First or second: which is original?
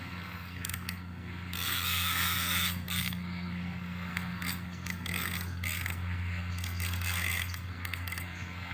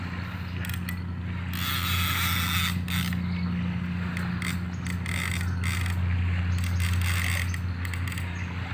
second